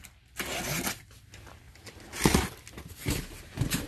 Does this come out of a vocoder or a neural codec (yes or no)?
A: no